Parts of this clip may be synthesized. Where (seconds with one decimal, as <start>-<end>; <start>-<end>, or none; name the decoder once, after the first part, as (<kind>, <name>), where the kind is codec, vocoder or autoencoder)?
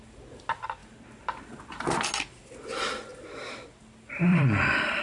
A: 4.3-5.0 (vocoder, BigVGAN v2)